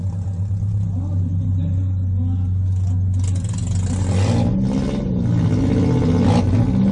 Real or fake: real